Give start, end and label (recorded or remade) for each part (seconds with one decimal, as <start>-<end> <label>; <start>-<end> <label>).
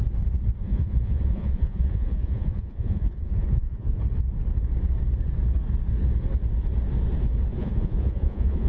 0.0-0.6 recorded; 0.6-4.0 remade; 4.0-7.6 recorded; 7.6-8.7 remade